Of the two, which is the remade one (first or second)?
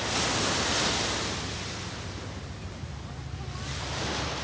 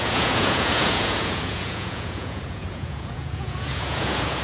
second